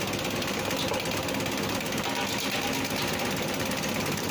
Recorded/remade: recorded